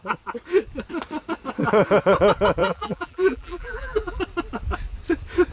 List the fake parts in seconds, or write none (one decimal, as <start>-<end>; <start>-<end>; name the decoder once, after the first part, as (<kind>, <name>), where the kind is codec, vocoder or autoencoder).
2.6-4.2 (vocoder, BigVGAN v2)